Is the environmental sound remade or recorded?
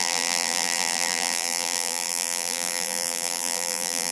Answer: remade